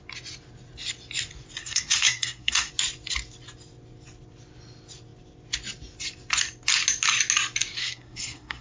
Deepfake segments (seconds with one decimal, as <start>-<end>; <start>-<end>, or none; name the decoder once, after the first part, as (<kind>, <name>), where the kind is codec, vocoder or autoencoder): 1.6-2.7 (codec, SNAC); 7.8-8.6